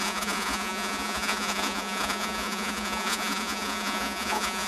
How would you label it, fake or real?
fake